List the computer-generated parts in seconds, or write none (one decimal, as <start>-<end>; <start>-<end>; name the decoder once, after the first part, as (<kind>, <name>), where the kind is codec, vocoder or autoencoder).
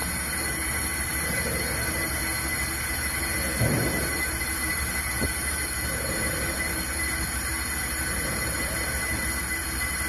0.0-2.2 (vocoder, BigVGAN v2); 2.9-10.1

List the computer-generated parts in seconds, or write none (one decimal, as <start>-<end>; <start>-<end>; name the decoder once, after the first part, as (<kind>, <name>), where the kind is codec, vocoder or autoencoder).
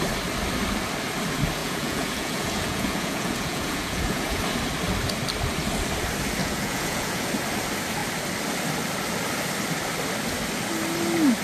1.6-4.4 (vocoder, Vocos); 6.4-7.3